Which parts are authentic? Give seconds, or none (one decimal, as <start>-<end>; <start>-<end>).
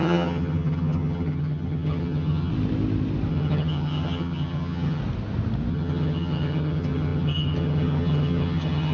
2.5-3.3; 5.0-5.7